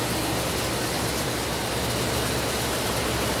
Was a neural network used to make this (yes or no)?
no